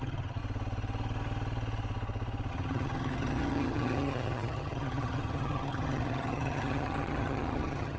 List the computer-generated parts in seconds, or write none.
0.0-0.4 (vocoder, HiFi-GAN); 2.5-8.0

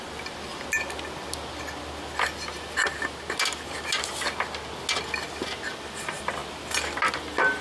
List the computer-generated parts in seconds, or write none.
none

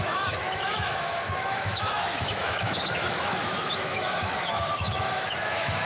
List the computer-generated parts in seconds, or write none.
0.0-5.9 (autoencoder, DAC-VAE)

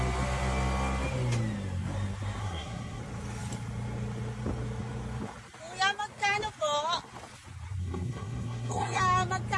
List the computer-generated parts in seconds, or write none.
2.4-3.0 (codec, SNAC); 7.8-9.0

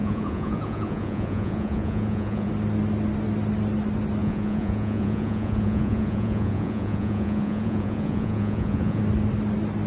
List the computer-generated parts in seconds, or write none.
0.0-2.5 (vocoder, Vocos); 4.2-9.0